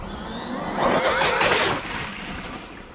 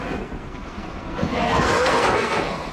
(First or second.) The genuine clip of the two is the first